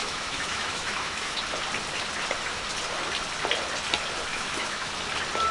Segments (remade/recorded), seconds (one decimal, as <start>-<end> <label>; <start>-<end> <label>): 0.0-1.4 remade; 1.4-4.3 recorded; 4.3-4.9 remade; 4.9-5.5 recorded